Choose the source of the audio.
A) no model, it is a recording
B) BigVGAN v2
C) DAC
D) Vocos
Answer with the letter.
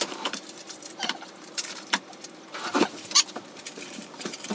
B